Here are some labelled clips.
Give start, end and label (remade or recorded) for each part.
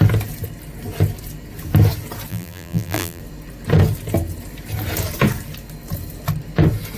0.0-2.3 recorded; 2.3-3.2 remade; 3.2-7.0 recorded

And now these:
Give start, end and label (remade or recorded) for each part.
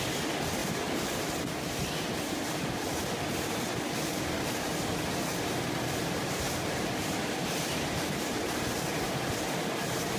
0.0-0.6 recorded; 0.6-3.8 remade; 3.8-5.3 recorded; 5.3-9.1 remade; 9.1-10.2 recorded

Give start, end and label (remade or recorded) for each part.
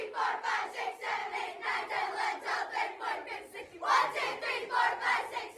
0.0-1.2 recorded; 1.2-1.9 remade; 1.9-5.6 recorded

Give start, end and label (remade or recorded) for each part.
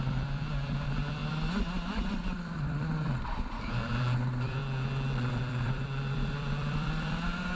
0.0-4.6 remade; 4.6-5.3 recorded; 5.3-7.6 remade